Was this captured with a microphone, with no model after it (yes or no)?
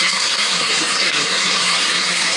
no